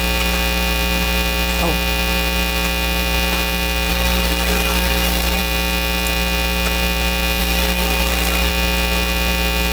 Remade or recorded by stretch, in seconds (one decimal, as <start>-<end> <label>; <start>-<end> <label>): 0.0-3.9 recorded; 3.9-5.4 remade; 5.4-7.4 recorded; 7.4-8.5 remade; 8.5-9.7 recorded